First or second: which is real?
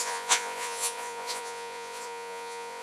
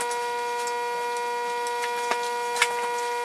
second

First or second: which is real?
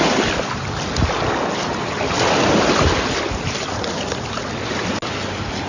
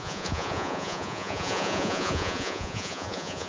first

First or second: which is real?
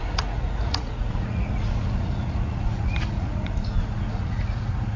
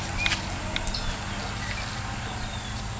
second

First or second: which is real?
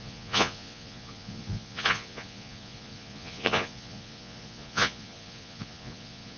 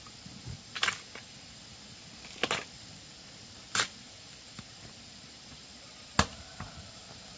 second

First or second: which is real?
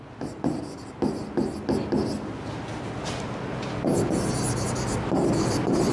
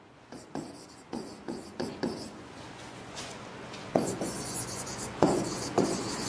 first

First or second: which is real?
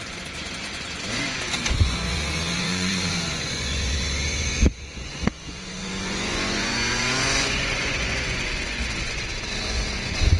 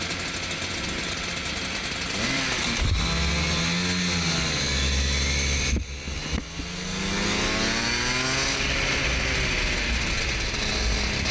second